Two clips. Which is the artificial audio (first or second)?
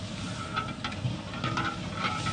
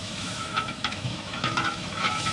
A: second